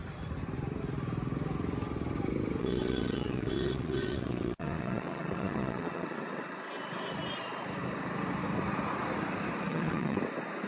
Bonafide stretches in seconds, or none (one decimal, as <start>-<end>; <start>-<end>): 0.0-2.6; 6.5-9.7; 10.2-10.7